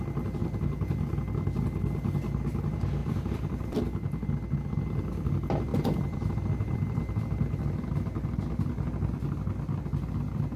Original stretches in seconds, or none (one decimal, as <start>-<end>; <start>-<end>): 0.0-0.4; 1.1-3.0; 3.8-5.7; 7.0-10.6